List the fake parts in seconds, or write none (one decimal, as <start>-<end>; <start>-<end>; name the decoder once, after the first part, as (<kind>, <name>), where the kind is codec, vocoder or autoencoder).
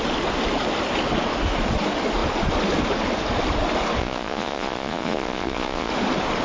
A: 4.0-5.9 (vocoder, Vocos)